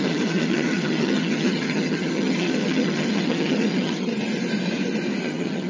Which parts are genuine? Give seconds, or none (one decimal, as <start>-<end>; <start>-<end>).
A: 4.1-5.2